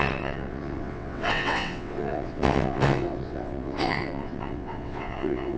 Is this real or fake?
fake